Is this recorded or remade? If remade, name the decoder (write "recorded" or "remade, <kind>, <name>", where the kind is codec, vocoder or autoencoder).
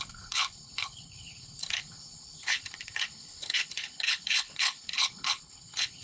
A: remade, codec, HILCodec